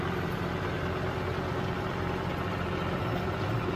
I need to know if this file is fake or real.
real